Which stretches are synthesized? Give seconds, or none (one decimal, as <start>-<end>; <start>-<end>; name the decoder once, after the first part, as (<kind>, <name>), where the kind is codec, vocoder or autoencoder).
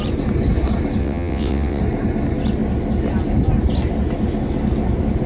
1.0-1.8 (vocoder, WaveNeXt)